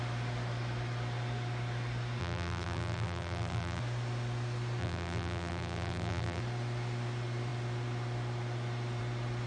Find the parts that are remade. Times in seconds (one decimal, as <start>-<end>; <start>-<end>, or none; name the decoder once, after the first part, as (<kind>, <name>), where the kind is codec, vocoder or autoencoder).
2.2-3.8 (vocoder, BigVGAN v2); 4.8-6.4